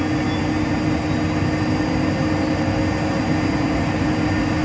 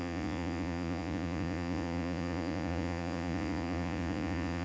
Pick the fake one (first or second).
second